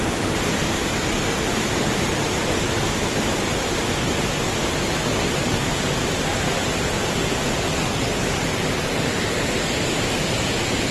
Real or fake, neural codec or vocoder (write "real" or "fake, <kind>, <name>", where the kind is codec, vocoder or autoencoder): real